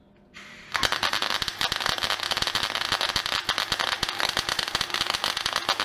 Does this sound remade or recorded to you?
recorded